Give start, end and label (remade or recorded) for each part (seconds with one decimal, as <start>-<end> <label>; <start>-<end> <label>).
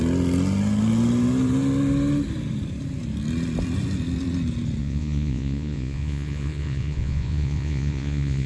0.0-4.8 recorded; 4.8-8.5 remade